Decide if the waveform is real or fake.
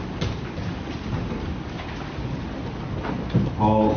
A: real